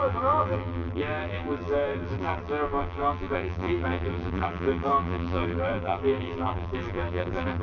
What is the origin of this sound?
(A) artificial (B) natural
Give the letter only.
A